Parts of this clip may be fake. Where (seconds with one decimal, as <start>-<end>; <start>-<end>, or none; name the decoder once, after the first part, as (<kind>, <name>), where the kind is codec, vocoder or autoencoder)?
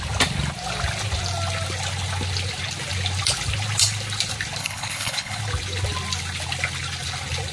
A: 4.6-5.4 (codec, HILCodec)